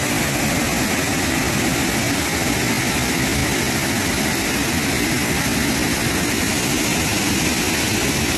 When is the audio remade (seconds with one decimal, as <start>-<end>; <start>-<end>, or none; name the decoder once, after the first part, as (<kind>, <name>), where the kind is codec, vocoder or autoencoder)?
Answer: none